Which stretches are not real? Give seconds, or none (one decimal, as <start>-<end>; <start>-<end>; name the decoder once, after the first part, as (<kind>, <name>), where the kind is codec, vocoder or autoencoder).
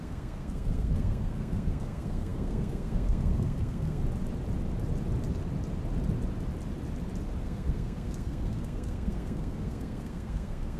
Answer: 0.0-4.0 (codec, SNAC); 7.4-10.8